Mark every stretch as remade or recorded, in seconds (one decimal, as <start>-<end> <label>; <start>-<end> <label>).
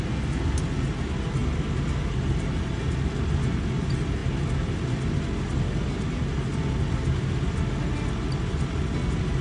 0.0-9.4 recorded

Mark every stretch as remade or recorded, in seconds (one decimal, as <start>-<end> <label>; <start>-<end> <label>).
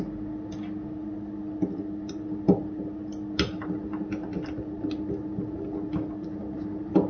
0.0-7.1 recorded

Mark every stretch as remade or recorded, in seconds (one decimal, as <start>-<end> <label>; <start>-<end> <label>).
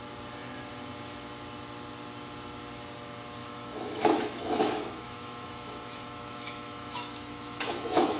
0.0-3.4 recorded; 3.4-8.2 remade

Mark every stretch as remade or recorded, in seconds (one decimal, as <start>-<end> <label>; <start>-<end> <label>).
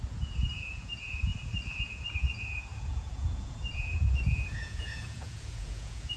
0.0-1.3 remade; 1.3-1.8 recorded; 1.8-6.2 remade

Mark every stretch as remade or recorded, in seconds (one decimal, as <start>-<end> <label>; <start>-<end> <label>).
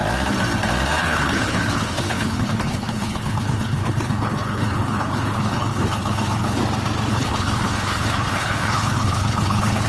0.0-1.0 recorded; 1.0-6.6 remade; 6.6-7.1 recorded; 7.1-9.9 remade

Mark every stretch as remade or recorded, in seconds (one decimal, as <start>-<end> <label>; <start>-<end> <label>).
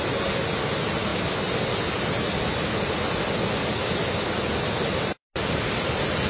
0.0-6.3 recorded